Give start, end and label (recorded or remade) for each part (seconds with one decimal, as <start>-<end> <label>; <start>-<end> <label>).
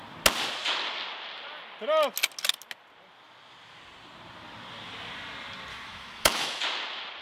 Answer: 0.0-5.7 recorded; 5.7-6.6 remade; 6.6-7.2 recorded